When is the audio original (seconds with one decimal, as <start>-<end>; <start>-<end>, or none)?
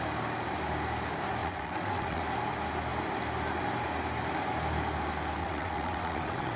0.0-1.4; 2.2-5.4